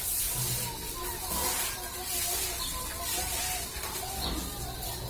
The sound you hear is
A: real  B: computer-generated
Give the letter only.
A